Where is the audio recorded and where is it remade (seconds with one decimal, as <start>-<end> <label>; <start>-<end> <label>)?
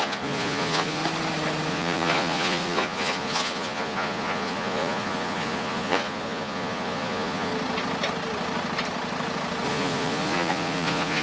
0.0-1.0 remade; 1.0-1.7 recorded; 1.7-7.5 remade; 7.5-9.7 recorded; 9.7-11.2 remade